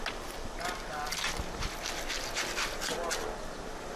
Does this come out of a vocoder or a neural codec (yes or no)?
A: no